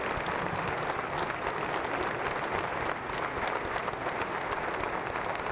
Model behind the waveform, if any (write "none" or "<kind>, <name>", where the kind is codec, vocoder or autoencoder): none